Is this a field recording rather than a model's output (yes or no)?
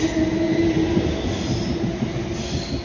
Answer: yes